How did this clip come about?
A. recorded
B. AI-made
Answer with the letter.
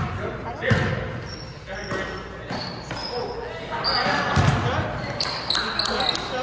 A